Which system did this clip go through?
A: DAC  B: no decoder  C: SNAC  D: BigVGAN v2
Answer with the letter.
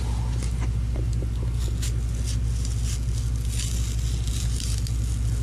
B